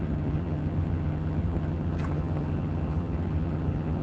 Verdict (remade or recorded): remade